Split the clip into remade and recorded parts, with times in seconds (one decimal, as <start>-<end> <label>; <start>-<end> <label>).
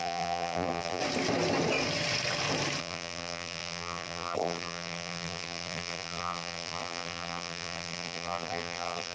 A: 0.0-1.0 remade; 1.0-2.8 recorded; 2.8-9.1 remade